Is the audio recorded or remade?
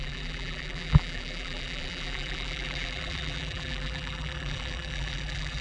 remade